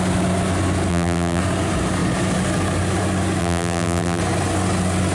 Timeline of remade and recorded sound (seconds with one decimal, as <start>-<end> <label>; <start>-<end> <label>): 0.0-0.9 recorded; 0.9-1.4 remade; 1.4-3.4 recorded; 3.4-4.2 remade; 4.2-5.1 recorded